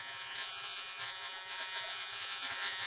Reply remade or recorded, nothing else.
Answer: remade